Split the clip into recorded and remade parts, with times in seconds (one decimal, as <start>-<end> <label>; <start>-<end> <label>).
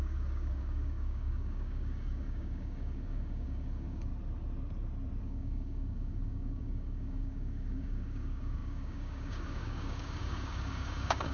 0.0-4.1 remade; 4.1-5.2 recorded; 5.2-11.3 remade